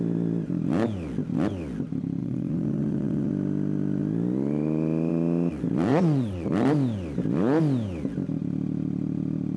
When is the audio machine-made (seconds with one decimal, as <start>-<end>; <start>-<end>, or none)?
2.2-3.3; 5.9-6.5

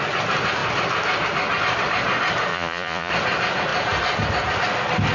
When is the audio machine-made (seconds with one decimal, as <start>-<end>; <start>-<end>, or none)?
2.5-3.1

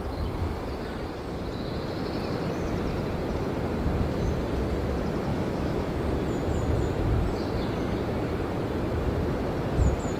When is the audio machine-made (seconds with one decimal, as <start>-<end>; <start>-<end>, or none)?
5.3-6.0